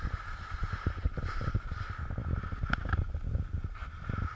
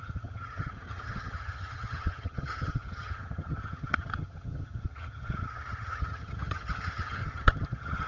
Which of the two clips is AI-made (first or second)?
second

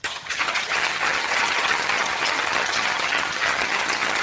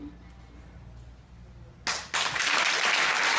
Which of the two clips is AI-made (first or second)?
first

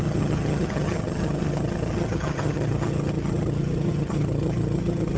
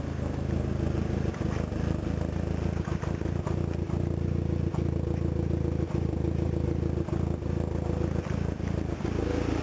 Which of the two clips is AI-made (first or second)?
first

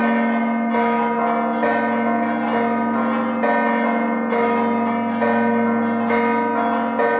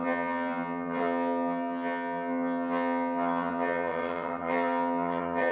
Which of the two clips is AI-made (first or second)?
second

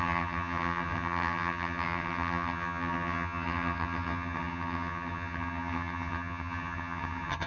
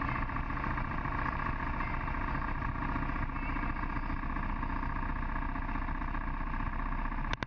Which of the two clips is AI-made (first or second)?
first